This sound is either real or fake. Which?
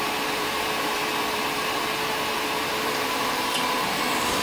fake